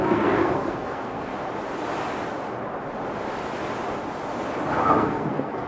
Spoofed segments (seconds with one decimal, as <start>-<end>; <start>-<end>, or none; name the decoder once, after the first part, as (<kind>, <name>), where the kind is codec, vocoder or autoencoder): 0.0-1.3 (codec, SNAC); 4.7-5.7